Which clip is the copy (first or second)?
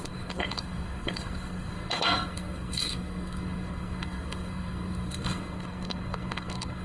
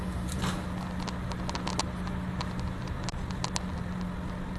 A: first